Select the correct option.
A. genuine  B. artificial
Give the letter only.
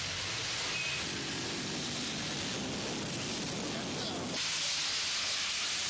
A